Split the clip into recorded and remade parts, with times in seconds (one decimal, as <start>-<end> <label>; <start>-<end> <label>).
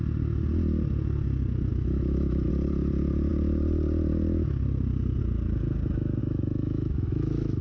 0.0-1.7 recorded; 1.7-2.5 remade; 2.5-6.2 recorded; 6.2-7.6 remade